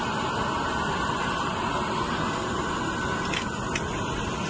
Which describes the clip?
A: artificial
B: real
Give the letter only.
B